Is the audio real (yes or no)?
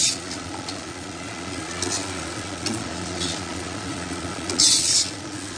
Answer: no